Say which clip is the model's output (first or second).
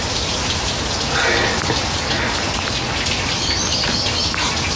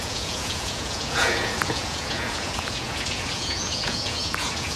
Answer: second